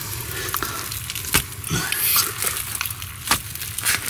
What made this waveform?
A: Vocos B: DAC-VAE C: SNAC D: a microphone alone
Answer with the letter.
D